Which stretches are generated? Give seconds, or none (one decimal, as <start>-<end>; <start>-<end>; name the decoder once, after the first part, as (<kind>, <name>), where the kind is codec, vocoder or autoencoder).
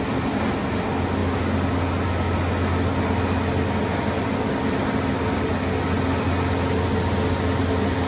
none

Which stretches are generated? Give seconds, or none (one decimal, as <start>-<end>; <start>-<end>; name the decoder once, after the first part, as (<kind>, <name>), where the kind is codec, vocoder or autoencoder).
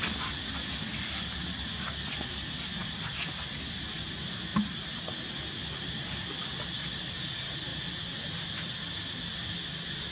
none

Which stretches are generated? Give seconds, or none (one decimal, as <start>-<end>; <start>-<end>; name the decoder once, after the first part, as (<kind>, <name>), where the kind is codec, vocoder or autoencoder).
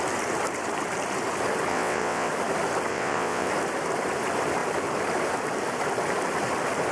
1.7-2.3 (vocoder, WaveNeXt); 2.9-3.5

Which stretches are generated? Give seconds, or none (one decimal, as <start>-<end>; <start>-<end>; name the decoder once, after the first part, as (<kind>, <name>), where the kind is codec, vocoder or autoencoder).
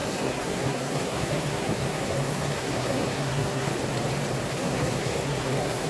0.0-3.7 (codec, SNAC); 4.5-5.9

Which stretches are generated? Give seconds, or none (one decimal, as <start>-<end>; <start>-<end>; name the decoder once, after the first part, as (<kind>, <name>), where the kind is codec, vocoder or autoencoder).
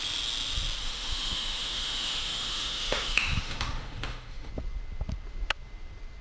0.8-4.5 (autoencoder, DAC-VAE)